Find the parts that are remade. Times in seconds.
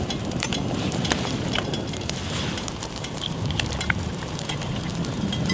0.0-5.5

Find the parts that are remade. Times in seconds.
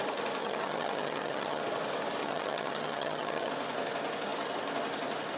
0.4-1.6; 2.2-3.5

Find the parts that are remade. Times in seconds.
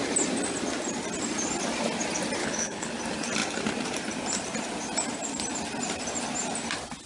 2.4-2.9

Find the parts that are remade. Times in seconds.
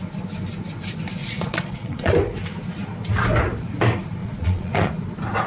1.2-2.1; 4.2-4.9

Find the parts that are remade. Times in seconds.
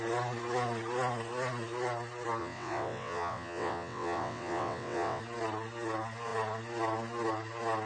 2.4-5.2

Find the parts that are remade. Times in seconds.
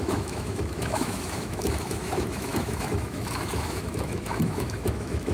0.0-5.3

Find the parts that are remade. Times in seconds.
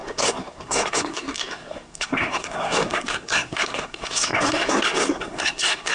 0.0-5.9